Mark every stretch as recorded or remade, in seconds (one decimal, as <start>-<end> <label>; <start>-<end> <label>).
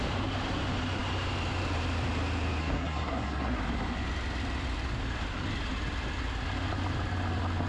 0.0-2.6 recorded; 2.6-3.6 remade; 3.6-7.7 recorded